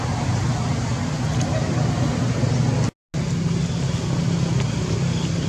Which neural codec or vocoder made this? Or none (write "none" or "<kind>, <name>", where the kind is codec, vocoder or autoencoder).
none